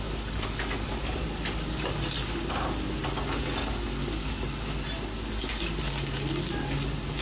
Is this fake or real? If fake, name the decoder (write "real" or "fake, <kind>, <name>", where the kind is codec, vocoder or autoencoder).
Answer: real